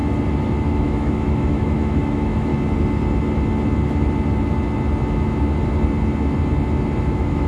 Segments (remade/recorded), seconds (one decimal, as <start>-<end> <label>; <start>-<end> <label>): 0.0-0.7 recorded; 0.7-2.5 remade; 2.5-7.0 recorded; 7.0-7.5 remade